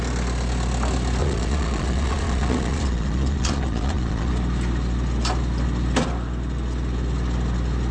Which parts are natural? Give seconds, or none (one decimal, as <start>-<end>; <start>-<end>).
0.0-1.2; 4.3-7.9